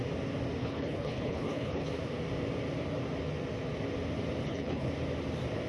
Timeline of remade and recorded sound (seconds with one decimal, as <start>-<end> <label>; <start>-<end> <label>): 0.0-0.6 recorded; 0.6-1.9 remade; 1.9-4.4 recorded; 4.4-4.9 remade; 4.9-5.7 recorded